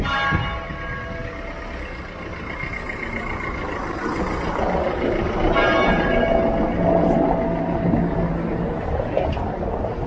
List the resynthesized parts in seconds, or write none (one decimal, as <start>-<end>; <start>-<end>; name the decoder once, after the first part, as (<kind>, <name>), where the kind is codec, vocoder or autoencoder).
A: none